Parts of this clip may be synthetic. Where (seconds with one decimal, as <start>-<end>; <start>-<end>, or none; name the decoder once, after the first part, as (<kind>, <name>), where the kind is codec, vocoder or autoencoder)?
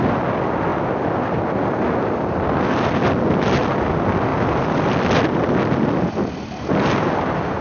none